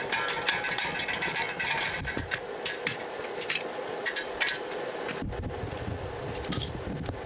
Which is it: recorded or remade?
recorded